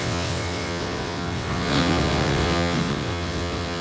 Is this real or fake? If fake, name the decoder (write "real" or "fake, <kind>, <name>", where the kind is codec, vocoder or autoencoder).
fake, vocoder, WaveNeXt